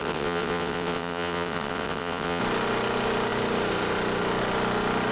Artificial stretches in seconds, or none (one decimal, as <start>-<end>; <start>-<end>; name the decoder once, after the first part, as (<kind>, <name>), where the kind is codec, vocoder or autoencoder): 0.0-2.4 (vocoder, WaveNeXt)